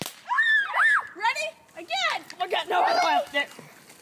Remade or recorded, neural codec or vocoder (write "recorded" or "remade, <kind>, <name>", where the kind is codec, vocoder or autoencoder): recorded